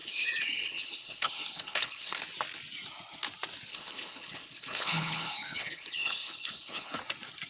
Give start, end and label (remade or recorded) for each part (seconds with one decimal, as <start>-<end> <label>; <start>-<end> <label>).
0.0-2.2 remade; 2.2-3.7 recorded; 3.7-7.0 remade; 7.0-7.5 recorded